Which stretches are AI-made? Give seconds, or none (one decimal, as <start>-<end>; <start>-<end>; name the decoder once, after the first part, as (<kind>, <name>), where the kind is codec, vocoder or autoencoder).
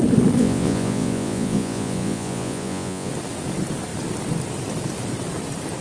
0.4-3.1 (vocoder, Vocos)